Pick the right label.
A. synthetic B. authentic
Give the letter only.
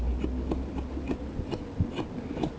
B